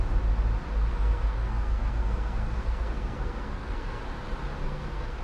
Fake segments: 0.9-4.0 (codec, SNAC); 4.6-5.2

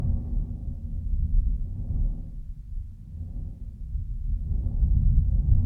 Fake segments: none

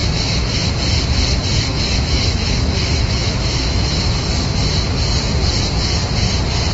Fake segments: 0.0-0.6 (autoencoder, DAC-VAE); 1.7-4.2

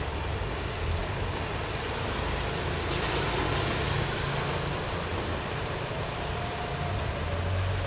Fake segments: 5.1-6.9 (vocoder, BigVGAN v2)

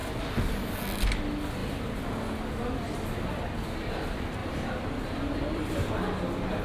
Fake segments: 4.4-5.9 (vocoder, BigVGAN v2)